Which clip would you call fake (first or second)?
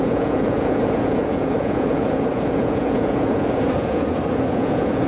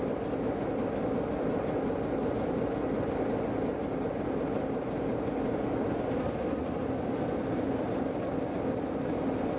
first